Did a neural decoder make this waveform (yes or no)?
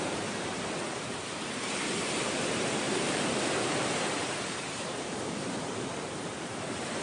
yes